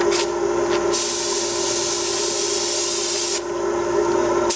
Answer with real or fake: real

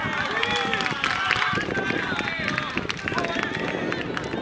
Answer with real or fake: real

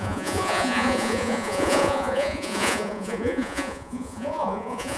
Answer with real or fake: fake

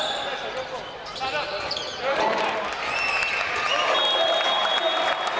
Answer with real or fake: real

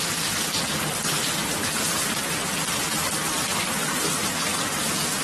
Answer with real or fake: real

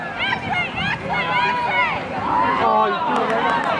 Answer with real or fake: real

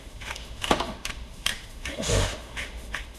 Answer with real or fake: fake